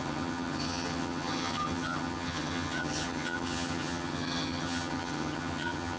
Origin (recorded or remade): remade